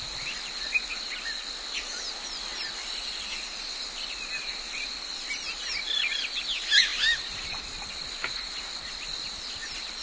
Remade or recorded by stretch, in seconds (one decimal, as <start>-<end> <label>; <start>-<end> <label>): 0.0-10.0 recorded

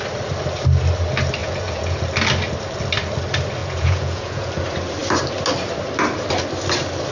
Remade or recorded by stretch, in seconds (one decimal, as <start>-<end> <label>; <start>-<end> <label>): 0.0-1.4 recorded; 1.4-2.0 remade; 2.0-3.6 recorded; 3.6-4.5 remade; 4.5-7.1 recorded